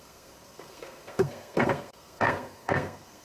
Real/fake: fake